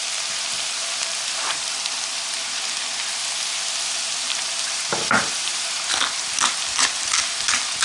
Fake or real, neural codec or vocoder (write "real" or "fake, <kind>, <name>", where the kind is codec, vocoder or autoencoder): fake, vocoder, BigVGAN v2